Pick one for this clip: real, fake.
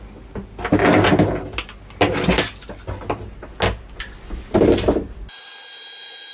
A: real